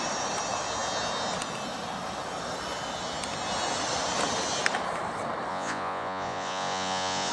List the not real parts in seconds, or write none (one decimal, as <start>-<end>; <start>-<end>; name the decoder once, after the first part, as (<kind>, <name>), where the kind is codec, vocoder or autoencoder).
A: 5.5-7.3 (vocoder, Vocos)